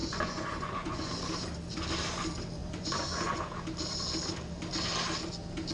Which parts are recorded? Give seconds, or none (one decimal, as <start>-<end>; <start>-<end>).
1.1-2.6; 3.5-5.7